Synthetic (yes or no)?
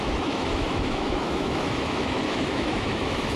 yes